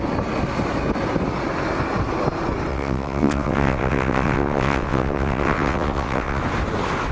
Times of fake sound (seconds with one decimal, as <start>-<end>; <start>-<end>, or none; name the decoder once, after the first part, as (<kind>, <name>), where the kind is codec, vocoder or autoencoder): 2.7-6.4 (vocoder, WaveNeXt)